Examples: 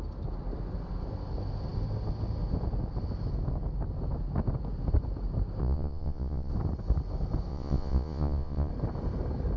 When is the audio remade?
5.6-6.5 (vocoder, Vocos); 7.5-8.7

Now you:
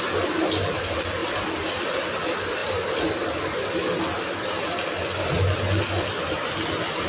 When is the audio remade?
none